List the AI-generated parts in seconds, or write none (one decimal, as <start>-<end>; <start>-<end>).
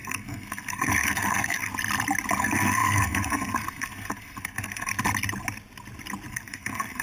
0.0-1.7; 2.4-4.9; 6.3-7.0